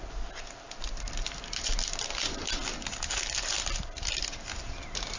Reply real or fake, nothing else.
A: real